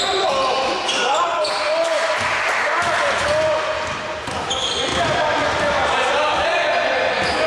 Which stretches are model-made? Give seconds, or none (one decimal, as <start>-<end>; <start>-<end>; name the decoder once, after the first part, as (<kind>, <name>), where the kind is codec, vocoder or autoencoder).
none